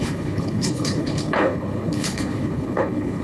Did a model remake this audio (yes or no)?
yes